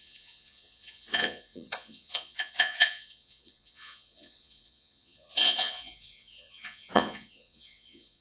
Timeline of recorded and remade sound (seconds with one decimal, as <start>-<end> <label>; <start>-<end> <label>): 0.0-8.2 remade